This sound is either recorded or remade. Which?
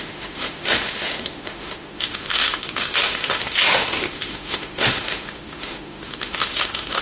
remade